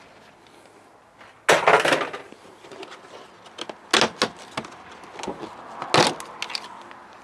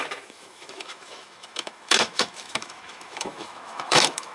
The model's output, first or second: second